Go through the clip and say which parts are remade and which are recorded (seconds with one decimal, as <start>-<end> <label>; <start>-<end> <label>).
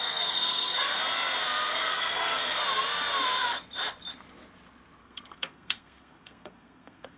0.0-1.0 remade; 1.0-1.7 recorded; 1.7-2.6 remade; 2.6-5.0 recorded; 5.0-7.2 remade